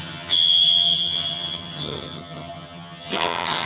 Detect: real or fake fake